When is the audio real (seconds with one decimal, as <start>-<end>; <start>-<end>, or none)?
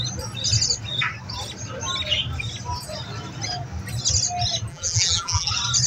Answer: 0.0-4.7; 5.5-5.9